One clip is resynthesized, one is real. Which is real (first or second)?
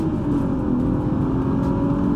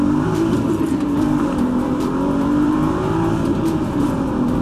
first